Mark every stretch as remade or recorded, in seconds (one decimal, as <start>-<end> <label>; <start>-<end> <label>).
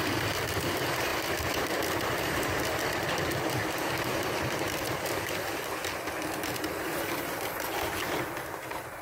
0.0-5.8 remade; 5.8-6.6 recorded; 6.6-9.0 remade